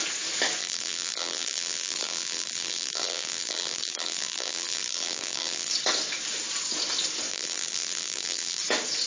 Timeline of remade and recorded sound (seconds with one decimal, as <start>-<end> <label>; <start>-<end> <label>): 0.0-0.6 recorded; 0.6-5.7 remade; 5.7-7.3 recorded; 7.3-8.6 remade; 8.6-9.1 recorded